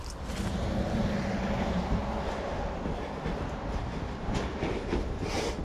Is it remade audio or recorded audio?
recorded